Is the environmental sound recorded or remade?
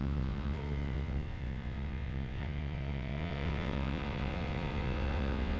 remade